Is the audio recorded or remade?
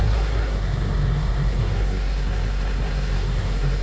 remade